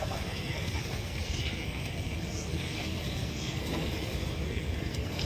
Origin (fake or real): fake